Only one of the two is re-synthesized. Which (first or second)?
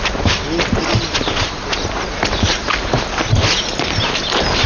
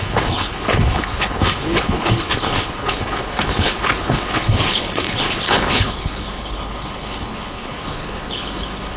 second